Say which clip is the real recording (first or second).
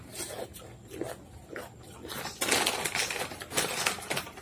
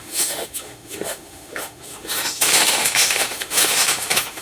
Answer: first